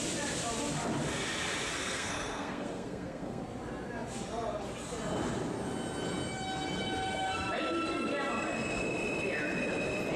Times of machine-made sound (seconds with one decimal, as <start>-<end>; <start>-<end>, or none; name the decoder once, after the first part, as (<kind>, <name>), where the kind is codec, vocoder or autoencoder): 1.7-3.4 (codec, SNAC)